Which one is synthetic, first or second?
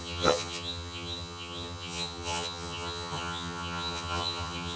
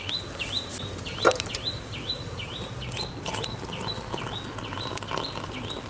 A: first